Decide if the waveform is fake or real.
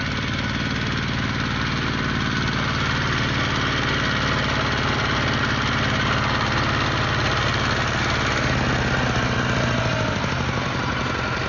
real